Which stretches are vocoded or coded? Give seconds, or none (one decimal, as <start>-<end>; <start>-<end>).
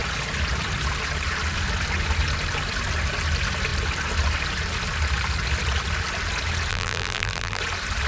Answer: 6.7-7.6